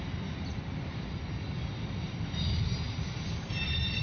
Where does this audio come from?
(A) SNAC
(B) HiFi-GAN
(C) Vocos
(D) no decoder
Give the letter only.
D